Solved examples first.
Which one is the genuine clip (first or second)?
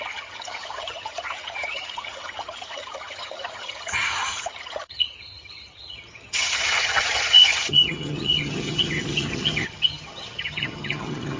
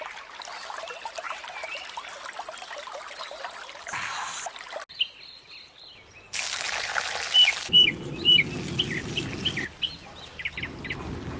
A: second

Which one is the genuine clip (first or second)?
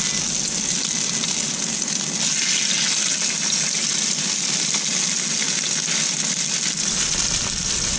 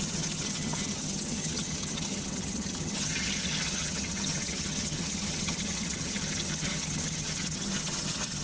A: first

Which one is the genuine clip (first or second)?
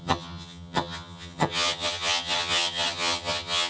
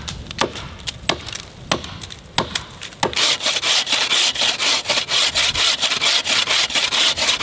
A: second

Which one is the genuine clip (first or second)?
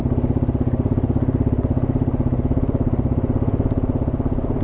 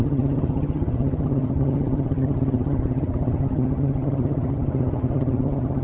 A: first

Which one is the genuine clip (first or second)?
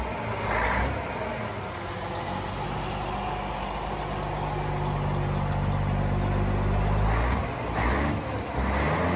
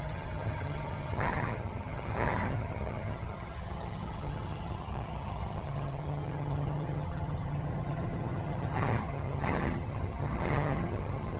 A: first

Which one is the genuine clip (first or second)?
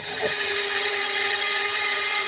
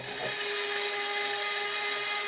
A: second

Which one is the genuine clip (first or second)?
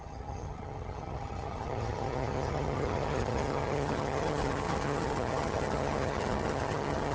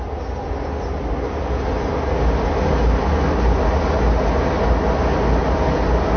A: second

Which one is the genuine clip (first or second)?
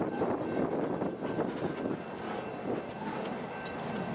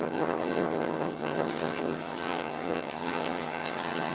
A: first